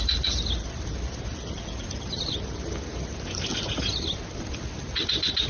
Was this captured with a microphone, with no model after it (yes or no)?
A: yes